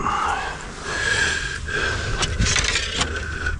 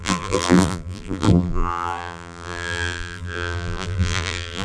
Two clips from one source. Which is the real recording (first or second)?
first